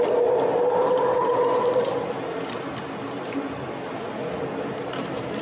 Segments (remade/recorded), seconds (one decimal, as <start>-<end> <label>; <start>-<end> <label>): 0.0-5.4 recorded